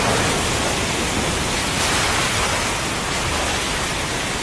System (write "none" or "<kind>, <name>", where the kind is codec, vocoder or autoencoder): none